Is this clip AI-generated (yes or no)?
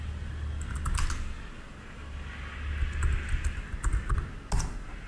no